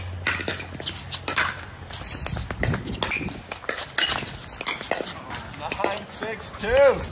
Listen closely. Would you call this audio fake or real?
real